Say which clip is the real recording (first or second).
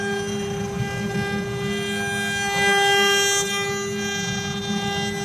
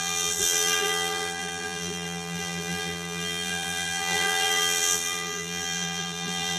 first